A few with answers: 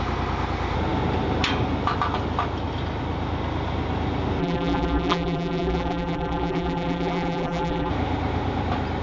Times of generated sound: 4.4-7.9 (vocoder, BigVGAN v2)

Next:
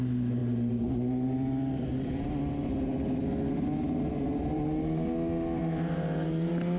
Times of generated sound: none